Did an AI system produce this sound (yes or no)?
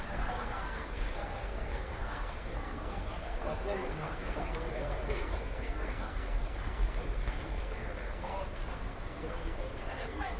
yes